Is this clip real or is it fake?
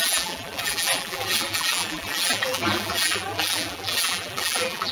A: fake